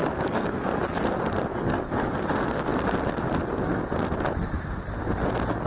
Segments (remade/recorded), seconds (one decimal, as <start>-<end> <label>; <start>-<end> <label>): 0.0-1.0 remade; 1.0-1.5 recorded; 1.5-2.3 remade; 2.3-5.7 recorded